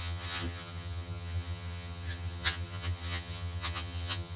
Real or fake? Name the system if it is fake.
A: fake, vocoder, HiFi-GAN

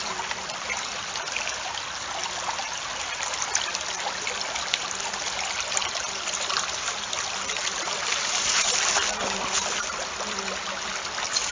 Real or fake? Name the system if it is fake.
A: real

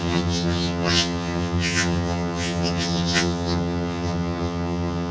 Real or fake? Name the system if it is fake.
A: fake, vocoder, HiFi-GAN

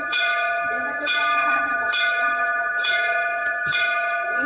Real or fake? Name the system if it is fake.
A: fake, vocoder, HiFi-GAN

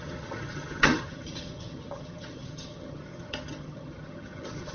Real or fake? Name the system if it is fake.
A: fake, vocoder, HiFi-GAN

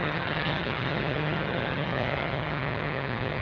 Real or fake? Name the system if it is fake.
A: fake, vocoder, HiFi-GAN